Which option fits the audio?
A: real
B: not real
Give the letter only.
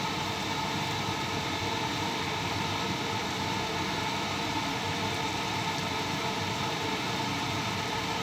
B